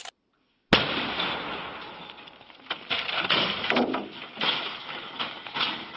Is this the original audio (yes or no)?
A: yes